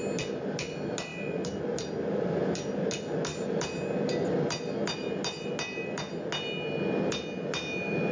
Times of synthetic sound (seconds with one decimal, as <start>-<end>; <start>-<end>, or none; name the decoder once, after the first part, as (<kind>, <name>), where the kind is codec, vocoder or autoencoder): none